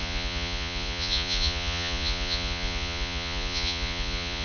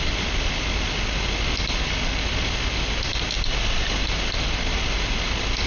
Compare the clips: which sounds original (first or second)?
second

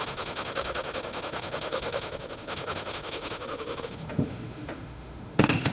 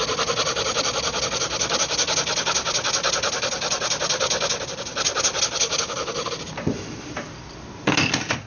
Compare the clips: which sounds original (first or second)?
second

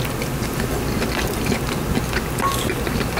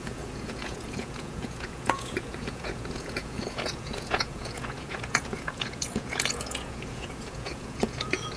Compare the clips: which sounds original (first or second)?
first